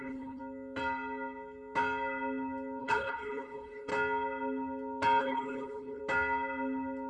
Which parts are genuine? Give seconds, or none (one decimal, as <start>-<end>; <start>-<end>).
0.4-2.8; 3.9-5.2; 6.0-7.1